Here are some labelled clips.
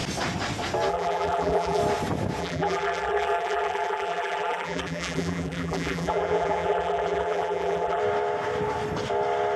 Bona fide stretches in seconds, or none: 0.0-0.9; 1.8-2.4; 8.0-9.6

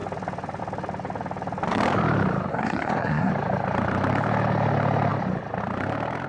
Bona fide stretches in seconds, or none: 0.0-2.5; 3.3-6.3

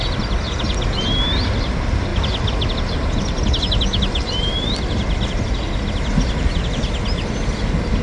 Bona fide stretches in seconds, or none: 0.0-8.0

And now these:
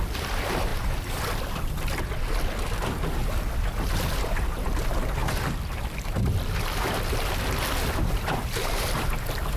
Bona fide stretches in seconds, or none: 0.0-0.7; 2.0-5.2; 9.0-9.6